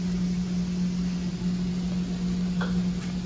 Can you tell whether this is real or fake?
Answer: real